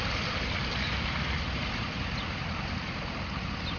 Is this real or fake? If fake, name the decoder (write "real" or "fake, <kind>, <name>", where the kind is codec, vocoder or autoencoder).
real